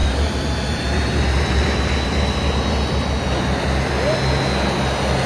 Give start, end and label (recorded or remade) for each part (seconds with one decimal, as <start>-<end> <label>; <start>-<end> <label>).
0.0-5.3 recorded